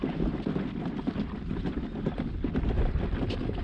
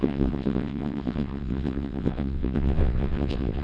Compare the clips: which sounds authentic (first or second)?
first